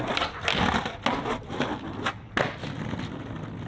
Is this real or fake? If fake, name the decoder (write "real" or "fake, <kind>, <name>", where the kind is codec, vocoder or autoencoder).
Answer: real